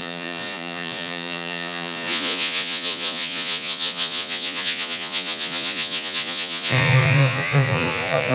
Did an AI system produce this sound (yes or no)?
yes